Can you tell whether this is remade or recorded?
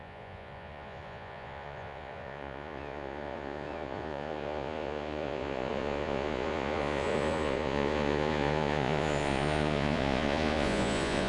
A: remade